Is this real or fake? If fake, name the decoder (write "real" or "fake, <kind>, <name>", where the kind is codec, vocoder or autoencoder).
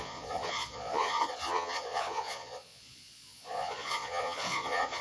fake, vocoder, Vocos